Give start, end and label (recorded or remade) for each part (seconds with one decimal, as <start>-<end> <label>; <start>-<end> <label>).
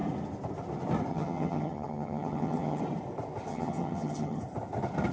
0.0-1.1 recorded; 1.1-2.8 remade; 2.8-3.5 recorded; 3.5-4.4 remade; 4.4-5.1 recorded